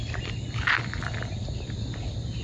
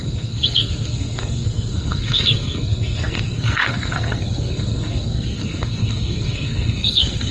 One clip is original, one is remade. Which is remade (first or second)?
second